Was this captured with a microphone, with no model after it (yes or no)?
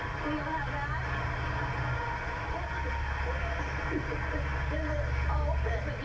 yes